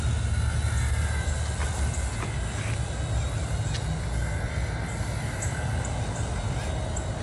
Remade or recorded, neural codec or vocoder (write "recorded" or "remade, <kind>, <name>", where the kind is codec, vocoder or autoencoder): recorded